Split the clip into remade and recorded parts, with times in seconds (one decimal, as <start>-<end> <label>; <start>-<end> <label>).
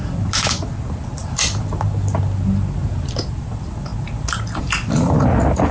0.0-1.2 recorded; 1.2-1.8 remade; 1.8-5.7 recorded